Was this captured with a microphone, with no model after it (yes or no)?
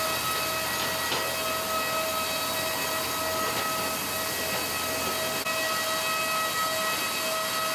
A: yes